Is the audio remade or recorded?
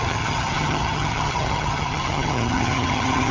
remade